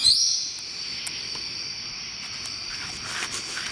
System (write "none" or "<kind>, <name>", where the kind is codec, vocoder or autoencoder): none